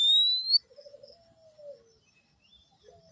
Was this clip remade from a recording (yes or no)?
no